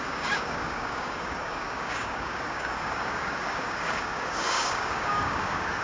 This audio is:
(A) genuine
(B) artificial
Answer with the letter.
B